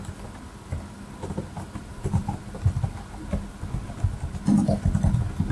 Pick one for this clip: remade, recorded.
recorded